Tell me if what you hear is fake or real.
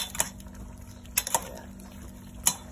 real